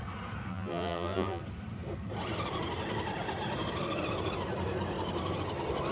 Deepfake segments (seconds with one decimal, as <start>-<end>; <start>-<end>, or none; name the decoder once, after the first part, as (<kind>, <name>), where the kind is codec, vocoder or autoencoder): 0.5-1.4 (vocoder, BigVGAN v2)